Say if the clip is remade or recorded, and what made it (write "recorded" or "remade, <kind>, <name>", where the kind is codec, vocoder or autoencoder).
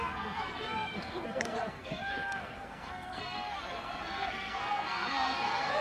remade, codec, SNAC